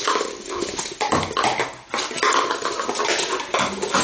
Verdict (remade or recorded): recorded